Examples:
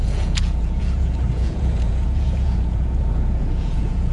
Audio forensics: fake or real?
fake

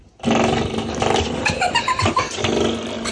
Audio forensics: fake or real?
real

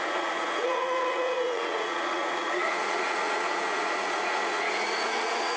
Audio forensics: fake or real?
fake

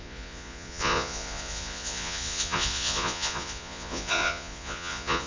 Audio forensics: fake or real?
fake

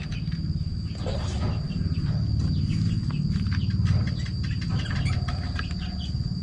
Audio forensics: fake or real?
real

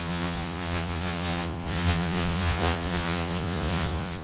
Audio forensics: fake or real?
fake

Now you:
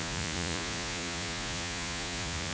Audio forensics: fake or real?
fake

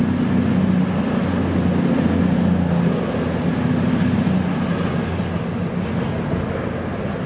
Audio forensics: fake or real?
real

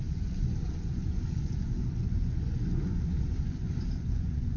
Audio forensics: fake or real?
fake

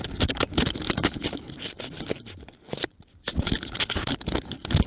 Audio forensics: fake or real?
real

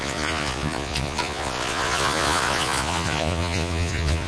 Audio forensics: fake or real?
fake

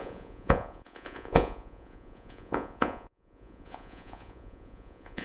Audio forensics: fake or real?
fake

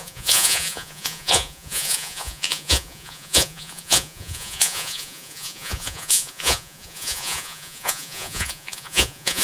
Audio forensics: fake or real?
fake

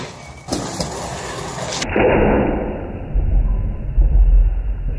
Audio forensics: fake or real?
real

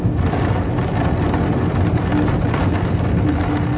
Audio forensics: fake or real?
real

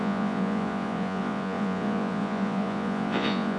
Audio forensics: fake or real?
fake